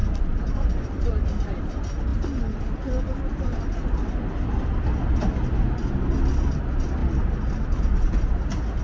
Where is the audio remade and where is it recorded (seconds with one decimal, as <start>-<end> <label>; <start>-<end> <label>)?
0.0-8.8 recorded